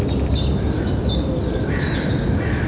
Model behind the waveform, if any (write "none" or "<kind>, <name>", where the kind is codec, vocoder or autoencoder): none